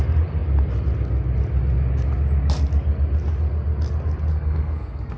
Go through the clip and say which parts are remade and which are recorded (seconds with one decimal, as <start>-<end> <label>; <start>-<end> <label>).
0.0-4.3 recorded; 4.3-5.2 remade